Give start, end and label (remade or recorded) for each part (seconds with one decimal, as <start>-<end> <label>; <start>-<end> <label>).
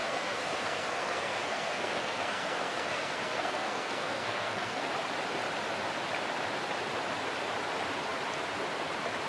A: 0.0-4.9 remade; 4.9-9.3 recorded